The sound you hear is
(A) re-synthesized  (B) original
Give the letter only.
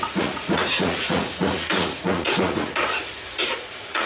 A